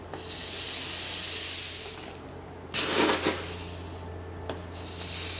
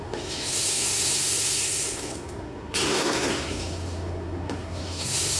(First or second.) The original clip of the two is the first